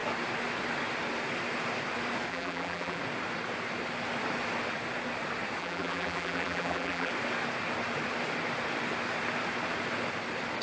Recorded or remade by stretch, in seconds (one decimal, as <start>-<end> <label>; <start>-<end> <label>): 0.0-2.3 recorded; 2.3-3.0 remade; 3.0-5.6 recorded; 5.6-7.1 remade; 7.1-10.6 recorded